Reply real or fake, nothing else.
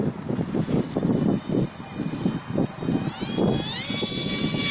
real